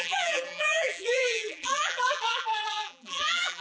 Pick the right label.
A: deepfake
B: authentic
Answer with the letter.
A